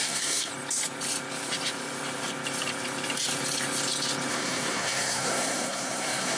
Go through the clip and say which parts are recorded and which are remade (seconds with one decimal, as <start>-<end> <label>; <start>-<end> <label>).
0.0-0.5 remade; 0.5-4.3 recorded; 4.3-6.4 remade